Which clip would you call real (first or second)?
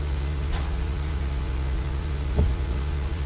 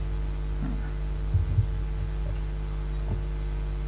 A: second